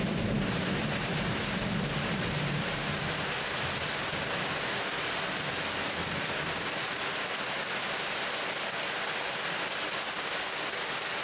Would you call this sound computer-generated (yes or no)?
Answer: no